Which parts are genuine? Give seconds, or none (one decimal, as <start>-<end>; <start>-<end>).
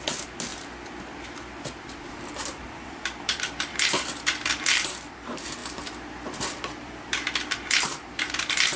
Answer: none